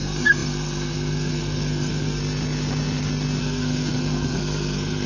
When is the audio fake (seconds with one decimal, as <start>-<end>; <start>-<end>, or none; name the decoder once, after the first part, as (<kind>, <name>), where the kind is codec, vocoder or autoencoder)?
0.0-2.2 (codec, SNAC); 3.4-5.1